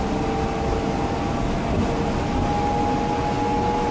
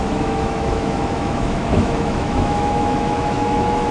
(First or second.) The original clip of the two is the first